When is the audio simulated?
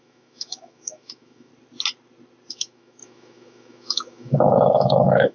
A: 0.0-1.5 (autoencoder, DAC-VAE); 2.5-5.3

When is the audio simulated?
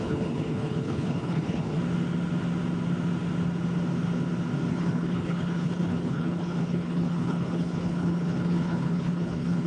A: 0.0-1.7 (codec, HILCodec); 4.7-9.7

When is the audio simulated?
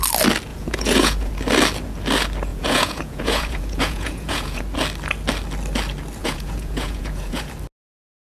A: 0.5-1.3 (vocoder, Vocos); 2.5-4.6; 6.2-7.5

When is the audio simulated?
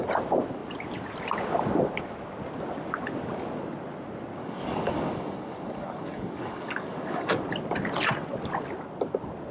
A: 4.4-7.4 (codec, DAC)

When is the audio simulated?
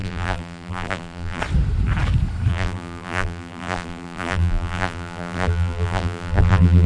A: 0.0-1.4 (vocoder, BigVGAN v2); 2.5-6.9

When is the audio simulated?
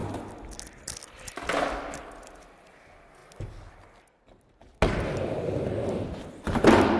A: none